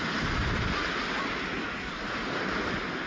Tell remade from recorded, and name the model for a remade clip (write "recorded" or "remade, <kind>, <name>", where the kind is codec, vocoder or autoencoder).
recorded